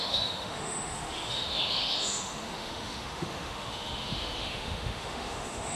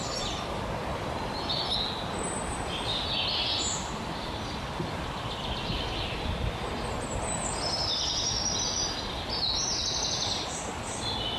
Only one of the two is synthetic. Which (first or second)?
first